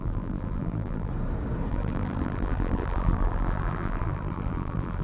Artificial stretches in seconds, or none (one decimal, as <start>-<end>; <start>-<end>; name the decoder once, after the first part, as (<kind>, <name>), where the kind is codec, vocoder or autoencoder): 0.0-1.1 (vocoder, BigVGAN v2); 1.7-5.0